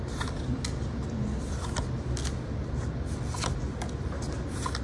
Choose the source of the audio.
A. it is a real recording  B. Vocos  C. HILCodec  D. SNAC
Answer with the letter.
A